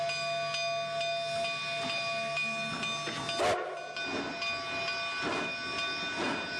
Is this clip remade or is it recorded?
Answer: recorded